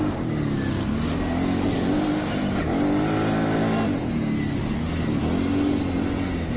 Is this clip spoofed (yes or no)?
no